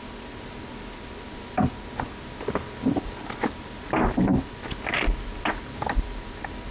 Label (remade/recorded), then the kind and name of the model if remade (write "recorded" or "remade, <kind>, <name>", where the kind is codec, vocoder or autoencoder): recorded